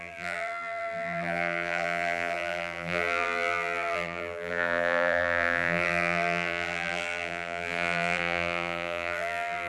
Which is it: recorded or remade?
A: remade